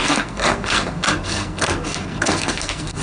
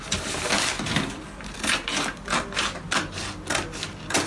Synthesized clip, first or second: first